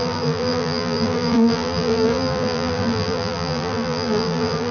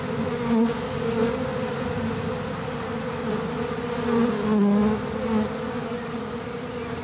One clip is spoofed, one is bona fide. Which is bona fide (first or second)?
second